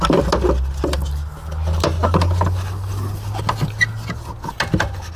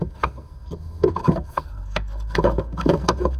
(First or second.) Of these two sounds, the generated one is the second